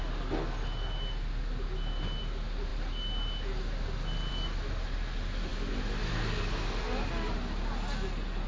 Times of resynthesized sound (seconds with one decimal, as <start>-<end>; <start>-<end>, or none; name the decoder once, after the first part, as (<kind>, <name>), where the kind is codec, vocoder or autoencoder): none